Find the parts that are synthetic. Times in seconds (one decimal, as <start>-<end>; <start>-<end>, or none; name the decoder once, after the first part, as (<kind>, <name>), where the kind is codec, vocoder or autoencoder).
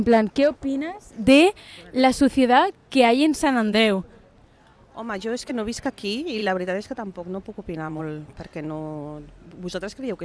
2.8-4.2 (vocoder, Vocos); 6.4-8.0